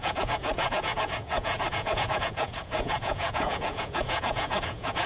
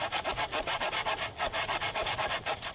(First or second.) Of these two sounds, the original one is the second